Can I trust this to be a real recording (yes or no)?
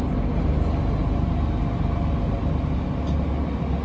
yes